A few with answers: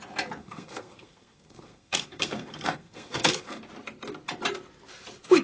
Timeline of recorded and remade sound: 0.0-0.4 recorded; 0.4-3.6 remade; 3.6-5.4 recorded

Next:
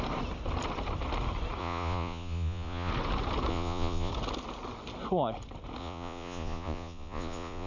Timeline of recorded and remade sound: 0.0-1.6 recorded; 1.6-2.9 remade; 2.9-3.5 recorded; 3.5-4.1 remade; 4.1-5.8 recorded; 5.8-7.7 remade

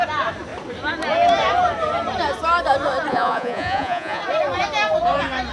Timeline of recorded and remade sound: 0.0-3.1 recorded; 3.1-4.2 remade; 4.2-5.5 recorded

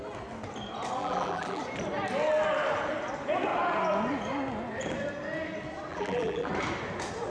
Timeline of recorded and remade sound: 0.0-1.0 recorded; 1.0-1.6 remade; 1.6-5.9 recorded; 5.9-6.5 remade; 6.5-7.3 recorded

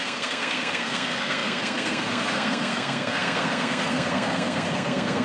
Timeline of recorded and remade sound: 0.0-5.2 remade

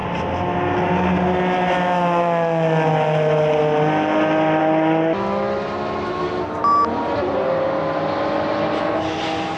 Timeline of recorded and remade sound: 0.0-9.6 recorded